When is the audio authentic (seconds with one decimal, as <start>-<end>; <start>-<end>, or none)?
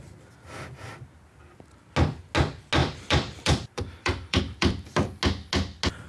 0.0-2.8; 5.2-6.1